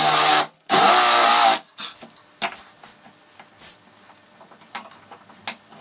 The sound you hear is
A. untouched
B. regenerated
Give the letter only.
A